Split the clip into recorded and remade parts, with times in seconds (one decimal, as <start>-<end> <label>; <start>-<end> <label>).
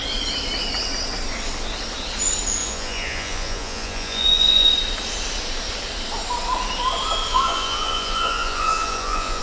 0.0-2.6 recorded; 2.6-4.7 remade; 4.7-7.3 recorded; 7.3-9.4 remade